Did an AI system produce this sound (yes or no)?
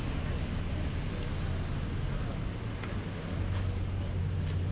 no